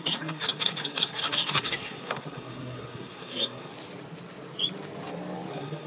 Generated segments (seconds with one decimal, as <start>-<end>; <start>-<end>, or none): 0.0-3.7; 5.5-5.9